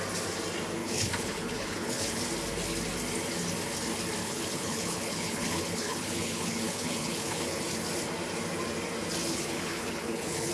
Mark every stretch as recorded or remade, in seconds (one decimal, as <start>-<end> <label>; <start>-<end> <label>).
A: 0.0-0.8 recorded; 0.8-2.2 remade; 2.2-4.2 recorded; 4.2-7.6 remade; 7.6-9.3 recorded; 9.3-10.5 remade